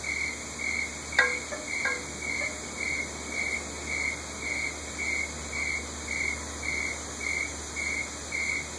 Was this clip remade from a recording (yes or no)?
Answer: no